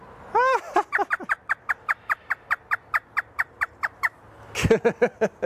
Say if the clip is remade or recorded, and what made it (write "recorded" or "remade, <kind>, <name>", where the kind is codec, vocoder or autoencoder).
recorded